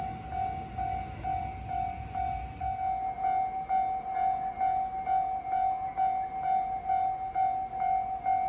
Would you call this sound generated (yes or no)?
no